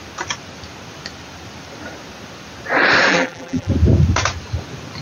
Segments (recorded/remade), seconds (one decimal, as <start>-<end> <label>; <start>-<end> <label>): 0.0-3.1 recorded; 3.1-3.7 remade; 3.7-5.0 recorded